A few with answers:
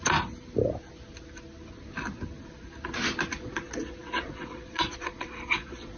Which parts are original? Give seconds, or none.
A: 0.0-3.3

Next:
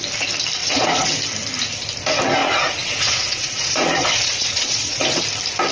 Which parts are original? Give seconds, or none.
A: 0.0-0.6; 1.1-2.4; 5.2-5.7